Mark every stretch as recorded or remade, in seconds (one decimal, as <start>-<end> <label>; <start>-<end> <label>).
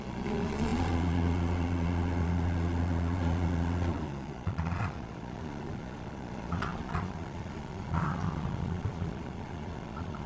0.0-10.3 remade